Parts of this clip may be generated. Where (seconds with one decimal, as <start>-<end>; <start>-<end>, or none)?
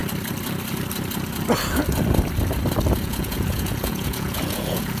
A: 3.0-5.0